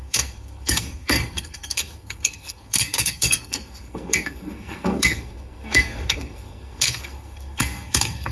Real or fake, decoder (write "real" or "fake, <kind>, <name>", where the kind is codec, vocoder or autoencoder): fake, codec, SNAC